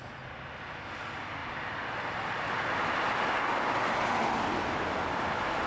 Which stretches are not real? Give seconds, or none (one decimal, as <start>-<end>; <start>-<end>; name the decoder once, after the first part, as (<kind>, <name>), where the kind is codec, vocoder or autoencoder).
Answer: none